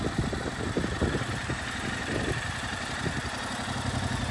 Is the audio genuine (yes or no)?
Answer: yes